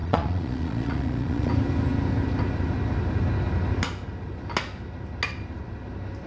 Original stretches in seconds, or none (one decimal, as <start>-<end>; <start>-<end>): 1.5-6.3